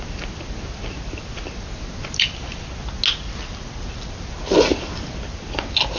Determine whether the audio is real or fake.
real